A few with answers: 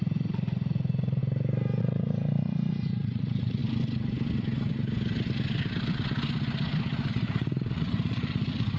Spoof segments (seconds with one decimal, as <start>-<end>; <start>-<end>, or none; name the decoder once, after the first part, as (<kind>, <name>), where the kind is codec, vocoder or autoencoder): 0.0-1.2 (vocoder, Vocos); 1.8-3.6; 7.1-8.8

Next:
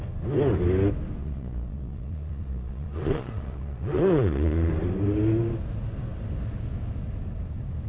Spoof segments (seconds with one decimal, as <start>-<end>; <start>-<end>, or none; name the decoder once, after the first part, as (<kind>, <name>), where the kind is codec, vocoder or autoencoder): 1.2-4.7 (vocoder, Vocos)

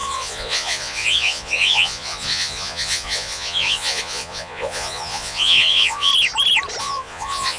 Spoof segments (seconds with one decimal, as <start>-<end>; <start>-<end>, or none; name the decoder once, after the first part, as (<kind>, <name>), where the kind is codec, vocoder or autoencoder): 0.0-6.1 (vocoder, Vocos); 6.8-7.6

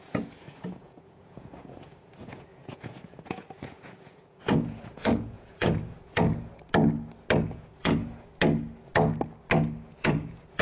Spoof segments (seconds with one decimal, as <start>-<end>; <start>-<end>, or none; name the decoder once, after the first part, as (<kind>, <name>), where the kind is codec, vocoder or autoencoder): 0.0-6.5 (vocoder, Vocos); 7.5-8.3; 9.9-10.6